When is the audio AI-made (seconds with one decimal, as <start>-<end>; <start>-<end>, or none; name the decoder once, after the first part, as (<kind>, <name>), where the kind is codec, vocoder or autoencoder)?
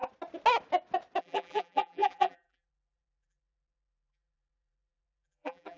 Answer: 1.2-5.8 (vocoder, BigVGAN v2)